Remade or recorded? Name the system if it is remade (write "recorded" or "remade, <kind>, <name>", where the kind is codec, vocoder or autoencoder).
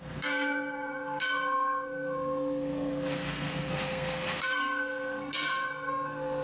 remade, codec, SNAC